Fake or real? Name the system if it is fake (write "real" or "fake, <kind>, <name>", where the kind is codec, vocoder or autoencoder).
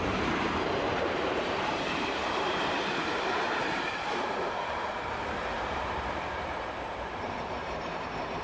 fake, vocoder, BigVGAN v2